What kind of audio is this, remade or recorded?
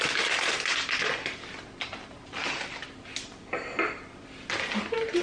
recorded